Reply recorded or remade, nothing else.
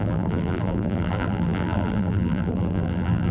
remade